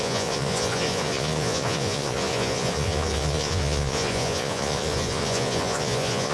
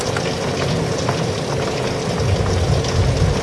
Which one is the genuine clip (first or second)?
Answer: second